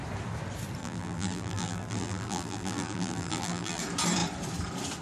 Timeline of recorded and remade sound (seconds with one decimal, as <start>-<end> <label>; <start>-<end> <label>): 0.0-0.8 recorded; 0.8-3.8 remade; 3.8-5.0 recorded